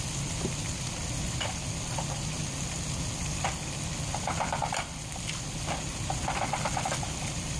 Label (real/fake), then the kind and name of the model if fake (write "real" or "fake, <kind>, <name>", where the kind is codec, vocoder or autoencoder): fake, vocoder, BigVGAN v2